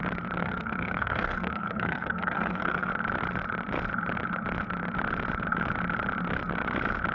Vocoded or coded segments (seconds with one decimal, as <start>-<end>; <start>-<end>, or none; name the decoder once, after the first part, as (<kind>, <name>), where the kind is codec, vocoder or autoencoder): 0.4-2.9 (codec, SNAC)